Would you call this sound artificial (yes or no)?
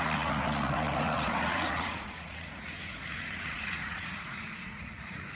yes